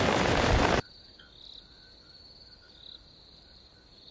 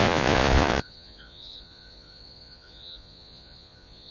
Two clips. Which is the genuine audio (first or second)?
first